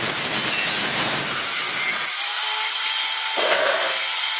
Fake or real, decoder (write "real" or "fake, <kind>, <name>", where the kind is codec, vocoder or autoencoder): real